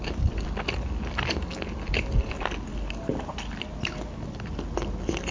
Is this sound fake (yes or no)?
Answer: no